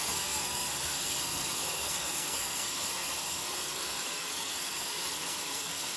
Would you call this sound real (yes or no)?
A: no